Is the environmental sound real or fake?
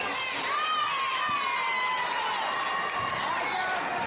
real